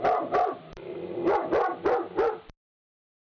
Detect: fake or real real